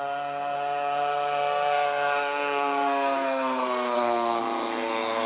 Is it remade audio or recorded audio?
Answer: remade